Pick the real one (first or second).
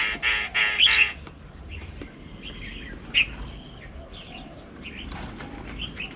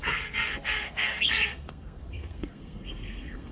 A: first